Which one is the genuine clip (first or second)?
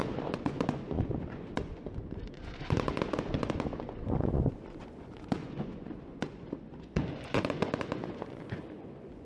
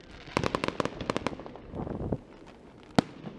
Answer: second